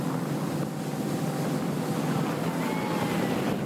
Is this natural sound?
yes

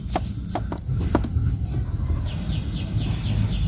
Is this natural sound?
yes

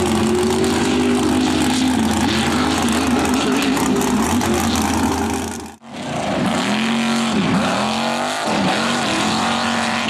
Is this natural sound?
yes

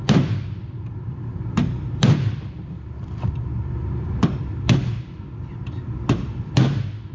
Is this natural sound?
no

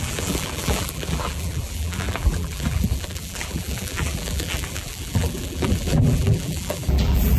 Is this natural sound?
no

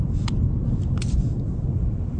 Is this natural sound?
yes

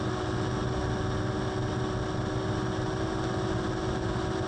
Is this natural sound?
yes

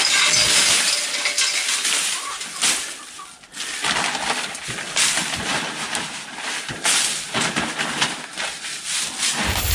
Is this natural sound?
yes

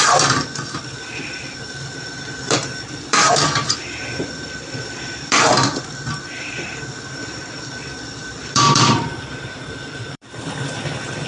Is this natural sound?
no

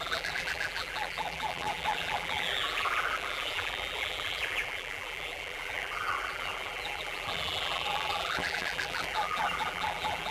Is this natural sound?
no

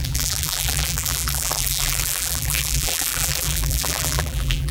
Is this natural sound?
no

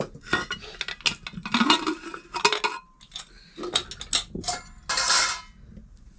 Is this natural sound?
yes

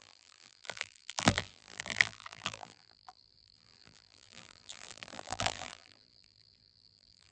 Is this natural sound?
no